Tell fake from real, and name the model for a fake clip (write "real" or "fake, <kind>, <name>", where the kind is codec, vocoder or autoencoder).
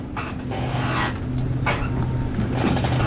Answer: real